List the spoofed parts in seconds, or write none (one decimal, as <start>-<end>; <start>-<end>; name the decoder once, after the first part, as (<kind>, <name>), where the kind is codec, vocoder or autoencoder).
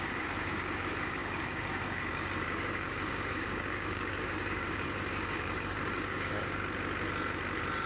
0.0-6.6 (codec, DAC)